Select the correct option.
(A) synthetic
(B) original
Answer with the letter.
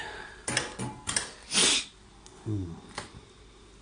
B